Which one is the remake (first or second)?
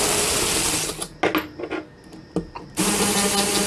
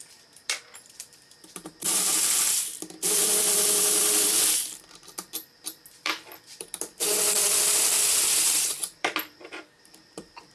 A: second